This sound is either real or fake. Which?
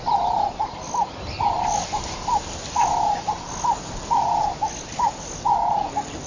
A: real